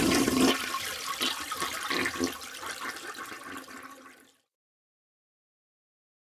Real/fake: fake